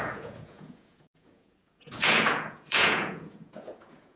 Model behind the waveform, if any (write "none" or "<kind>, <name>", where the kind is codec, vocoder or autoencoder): vocoder, Vocos